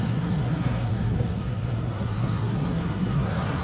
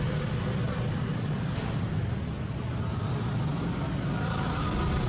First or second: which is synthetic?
first